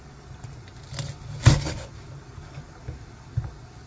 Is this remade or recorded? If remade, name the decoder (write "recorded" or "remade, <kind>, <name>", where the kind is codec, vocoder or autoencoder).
recorded